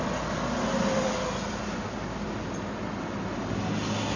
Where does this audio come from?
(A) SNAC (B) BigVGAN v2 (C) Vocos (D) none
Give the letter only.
D